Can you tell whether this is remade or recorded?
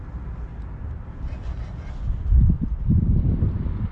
recorded